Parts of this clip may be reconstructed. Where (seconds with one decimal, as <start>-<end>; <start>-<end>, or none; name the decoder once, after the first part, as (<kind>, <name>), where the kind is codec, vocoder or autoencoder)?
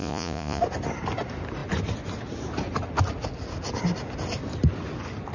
0.0-0.6 (vocoder, Vocos)